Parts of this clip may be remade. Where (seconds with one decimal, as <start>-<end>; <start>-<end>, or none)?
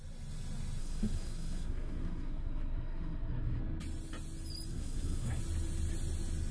0.8-3.6; 4.7-5.4